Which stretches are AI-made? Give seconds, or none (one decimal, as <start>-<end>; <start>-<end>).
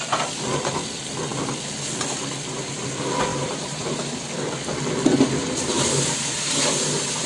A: 3.3-4.2; 5.4-6.5